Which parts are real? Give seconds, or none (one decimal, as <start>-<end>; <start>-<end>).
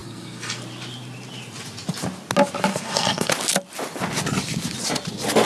0.6-2.7; 3.3-5.5